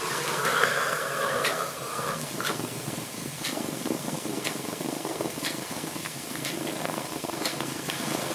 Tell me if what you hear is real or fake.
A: fake